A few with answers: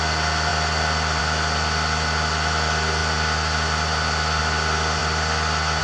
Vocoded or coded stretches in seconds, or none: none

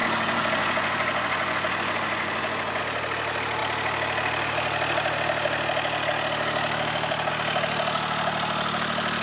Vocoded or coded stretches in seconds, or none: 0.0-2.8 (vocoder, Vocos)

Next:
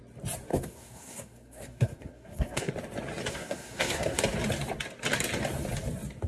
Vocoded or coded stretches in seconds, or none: 0.5-2.7 (codec, SNAC); 3.3-4.2

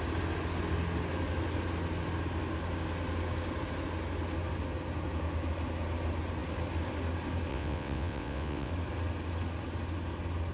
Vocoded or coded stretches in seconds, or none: 7.5-8.7 (vocoder, WaveNeXt)